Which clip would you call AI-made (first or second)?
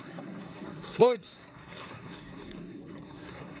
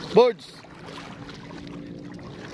first